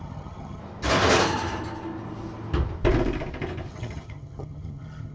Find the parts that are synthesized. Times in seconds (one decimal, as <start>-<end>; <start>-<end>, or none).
0.0-0.6; 3.7-5.1